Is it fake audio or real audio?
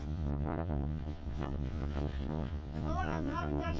fake